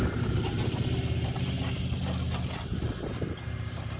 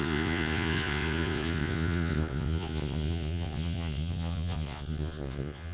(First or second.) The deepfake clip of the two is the second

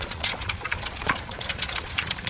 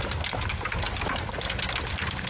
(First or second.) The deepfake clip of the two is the first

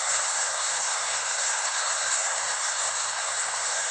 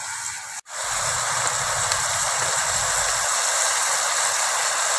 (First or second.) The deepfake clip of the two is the first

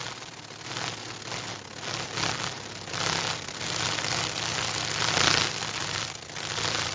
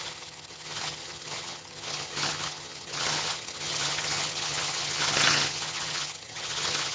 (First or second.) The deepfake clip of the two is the second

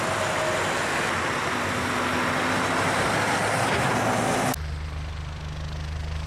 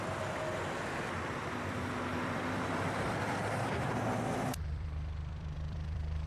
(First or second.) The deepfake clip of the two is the second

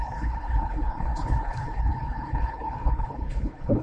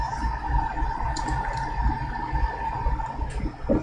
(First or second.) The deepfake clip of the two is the first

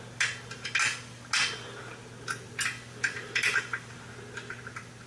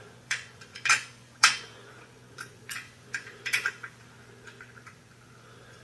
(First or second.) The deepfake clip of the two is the second